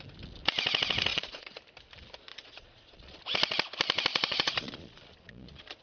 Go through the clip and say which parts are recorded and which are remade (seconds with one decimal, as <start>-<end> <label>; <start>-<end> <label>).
0.0-1.1 recorded; 1.1-1.6 remade; 1.6-2.3 recorded; 2.3-3.2 remade; 3.2-4.1 recorded; 4.1-5.8 remade